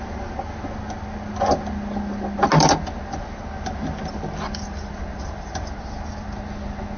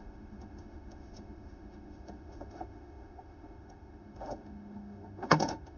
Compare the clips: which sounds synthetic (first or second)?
second